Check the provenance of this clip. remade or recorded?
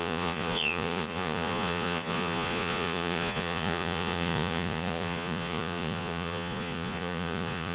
remade